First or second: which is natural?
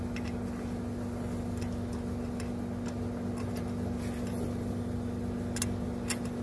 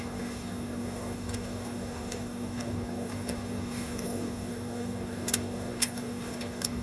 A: first